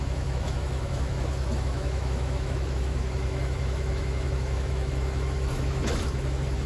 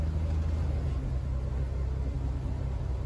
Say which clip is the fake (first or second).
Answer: first